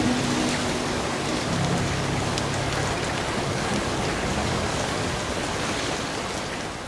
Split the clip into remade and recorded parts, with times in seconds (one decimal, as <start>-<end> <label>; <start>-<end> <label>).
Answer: 0.0-0.5 recorded; 0.5-2.6 remade; 2.6-3.4 recorded; 3.4-5.1 remade; 5.1-6.9 recorded